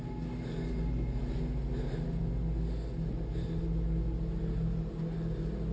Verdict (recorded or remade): recorded